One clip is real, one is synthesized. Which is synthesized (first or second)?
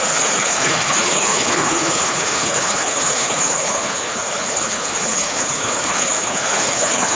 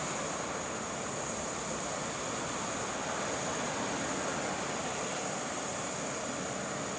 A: first